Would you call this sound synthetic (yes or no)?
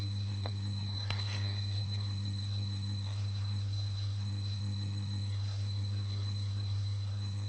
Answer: yes